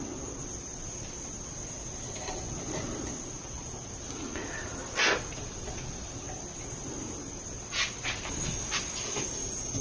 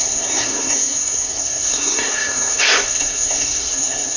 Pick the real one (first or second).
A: first